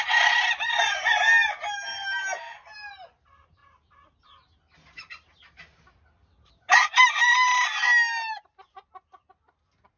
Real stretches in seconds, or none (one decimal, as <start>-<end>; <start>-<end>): 0.0-10.0